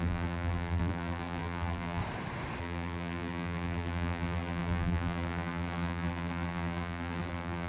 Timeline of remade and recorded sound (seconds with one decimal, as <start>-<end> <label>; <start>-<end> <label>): 0.0-2.0 remade; 2.0-2.6 recorded; 2.6-7.7 remade